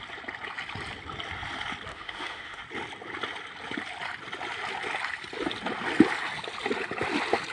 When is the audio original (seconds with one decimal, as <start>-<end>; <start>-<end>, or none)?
0.0-1.9; 2.6-7.5